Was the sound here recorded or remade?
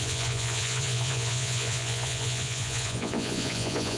remade